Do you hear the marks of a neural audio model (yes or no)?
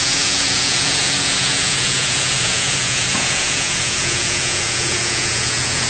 yes